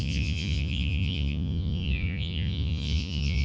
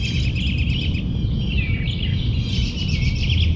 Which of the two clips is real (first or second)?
second